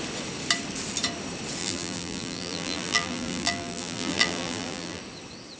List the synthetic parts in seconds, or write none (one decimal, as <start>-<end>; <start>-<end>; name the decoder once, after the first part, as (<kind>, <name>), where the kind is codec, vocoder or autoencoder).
1.6-5.0 (vocoder, BigVGAN v2)